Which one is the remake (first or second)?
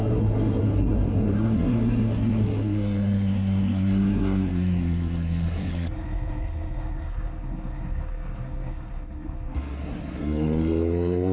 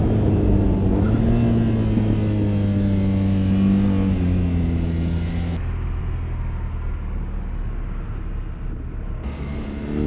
first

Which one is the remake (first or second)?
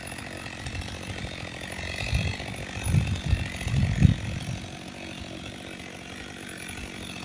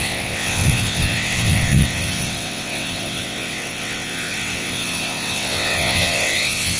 second